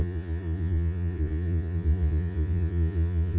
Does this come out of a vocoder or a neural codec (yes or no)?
yes